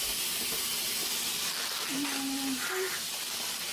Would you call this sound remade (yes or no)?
no